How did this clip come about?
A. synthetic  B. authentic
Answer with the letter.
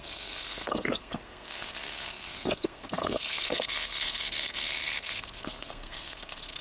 A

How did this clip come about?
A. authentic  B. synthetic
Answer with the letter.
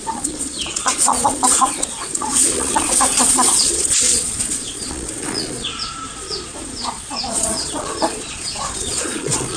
B